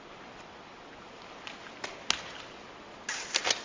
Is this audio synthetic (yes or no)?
no